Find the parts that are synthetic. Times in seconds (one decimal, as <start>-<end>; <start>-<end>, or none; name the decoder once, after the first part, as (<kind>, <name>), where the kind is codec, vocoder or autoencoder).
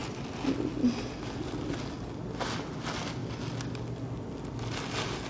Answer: none